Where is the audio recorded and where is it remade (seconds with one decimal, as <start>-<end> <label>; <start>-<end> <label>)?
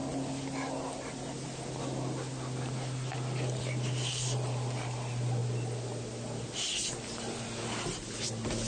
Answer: 0.0-8.7 recorded